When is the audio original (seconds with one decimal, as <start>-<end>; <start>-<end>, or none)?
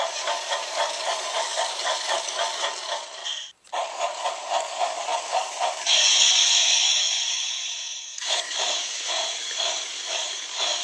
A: 3.2-3.9